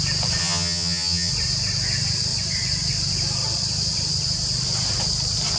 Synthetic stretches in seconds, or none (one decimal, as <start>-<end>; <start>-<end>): 0.4-1.3